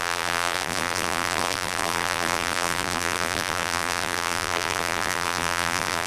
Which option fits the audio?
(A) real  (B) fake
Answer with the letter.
B